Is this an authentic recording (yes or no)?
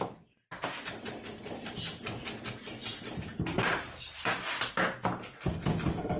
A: yes